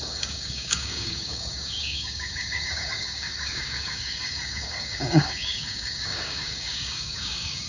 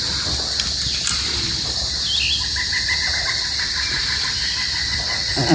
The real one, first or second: second